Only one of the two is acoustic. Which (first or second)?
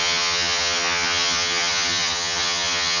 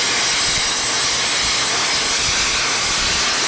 second